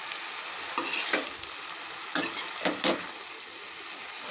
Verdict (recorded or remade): recorded